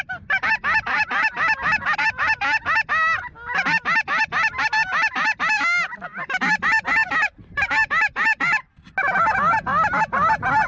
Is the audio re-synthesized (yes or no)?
no